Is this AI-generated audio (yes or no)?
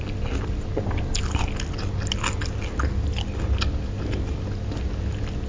no